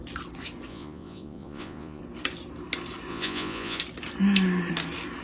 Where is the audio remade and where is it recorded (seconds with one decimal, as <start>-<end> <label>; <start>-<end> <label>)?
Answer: 0.0-0.7 recorded; 0.7-2.0 remade; 2.0-3.1 recorded; 3.1-3.8 remade; 3.8-5.2 recorded